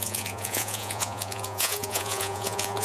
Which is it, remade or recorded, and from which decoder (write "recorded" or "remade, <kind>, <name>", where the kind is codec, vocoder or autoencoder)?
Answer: remade, vocoder, Vocos